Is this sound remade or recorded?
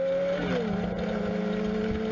recorded